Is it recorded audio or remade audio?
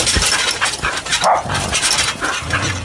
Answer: recorded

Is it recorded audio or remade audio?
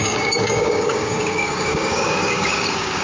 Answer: remade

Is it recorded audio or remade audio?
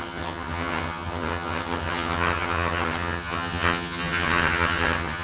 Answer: remade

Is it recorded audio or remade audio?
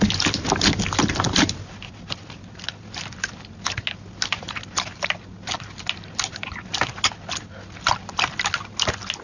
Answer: recorded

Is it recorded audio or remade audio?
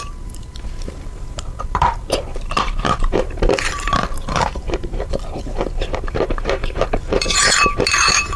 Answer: remade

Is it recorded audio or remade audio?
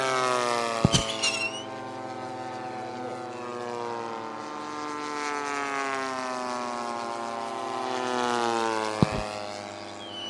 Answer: recorded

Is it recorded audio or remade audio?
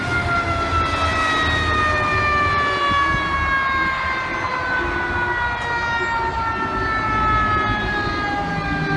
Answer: recorded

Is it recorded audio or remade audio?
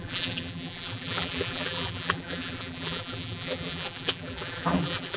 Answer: remade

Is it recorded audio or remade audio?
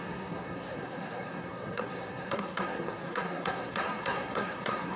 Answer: remade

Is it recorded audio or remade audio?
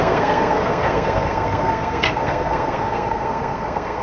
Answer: remade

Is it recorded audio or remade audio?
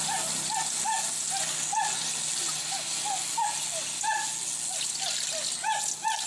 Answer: recorded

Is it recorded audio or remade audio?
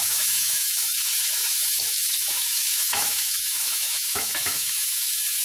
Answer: remade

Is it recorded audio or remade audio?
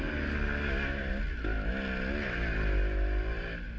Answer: recorded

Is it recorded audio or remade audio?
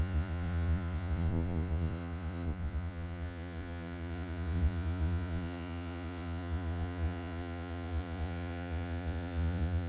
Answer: remade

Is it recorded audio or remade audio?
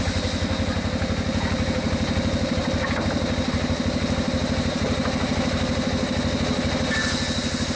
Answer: recorded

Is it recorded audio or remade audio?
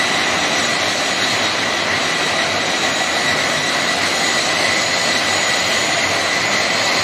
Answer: recorded